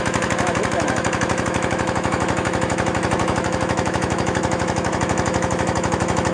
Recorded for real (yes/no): no